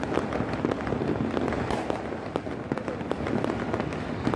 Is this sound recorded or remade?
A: recorded